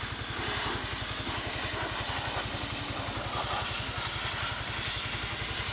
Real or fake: real